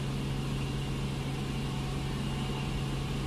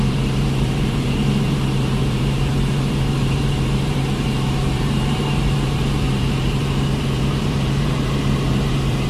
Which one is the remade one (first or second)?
second